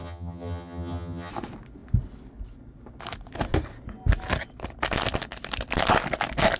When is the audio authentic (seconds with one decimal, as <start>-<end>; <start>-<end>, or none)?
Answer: 1.3-6.6